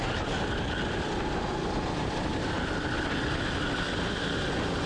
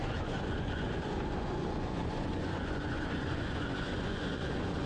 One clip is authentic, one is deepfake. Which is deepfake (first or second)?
second